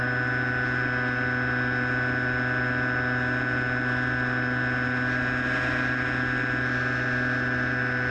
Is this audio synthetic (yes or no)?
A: no